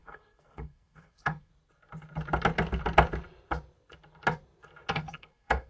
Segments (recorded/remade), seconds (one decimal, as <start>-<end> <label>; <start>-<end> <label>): 0.0-1.5 remade; 1.5-4.9 recorded; 4.9-5.7 remade